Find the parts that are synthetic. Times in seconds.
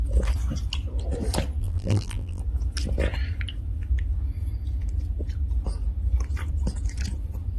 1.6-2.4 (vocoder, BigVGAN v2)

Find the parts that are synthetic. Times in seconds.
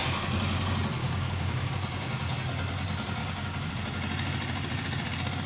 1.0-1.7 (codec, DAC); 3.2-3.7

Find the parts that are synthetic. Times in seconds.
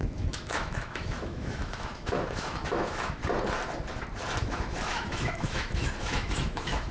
0.0-3.2 (autoencoder, DAC-VAE); 4.4-6.9